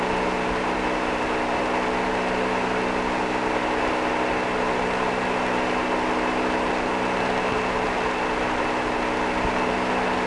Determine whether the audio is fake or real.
real